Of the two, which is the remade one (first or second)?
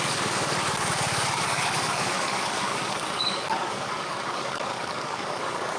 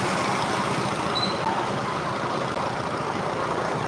first